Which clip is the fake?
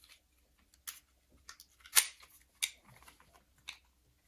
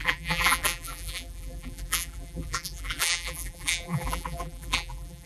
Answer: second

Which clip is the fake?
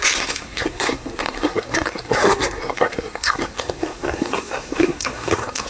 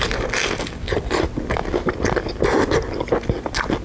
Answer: first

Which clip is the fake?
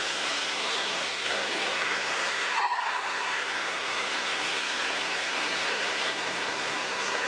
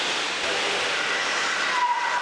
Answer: first